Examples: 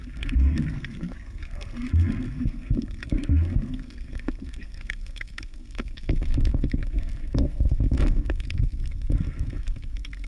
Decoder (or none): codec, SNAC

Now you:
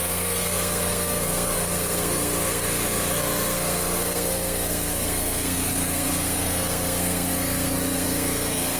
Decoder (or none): codec, SNAC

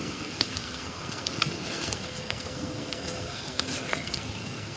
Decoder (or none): codec, SNAC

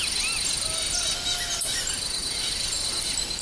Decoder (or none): none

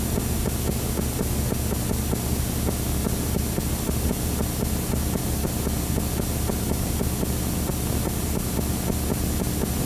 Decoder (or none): none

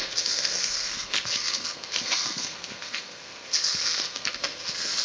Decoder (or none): codec, SNAC